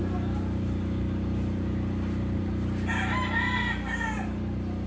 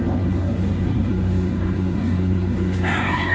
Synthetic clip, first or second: second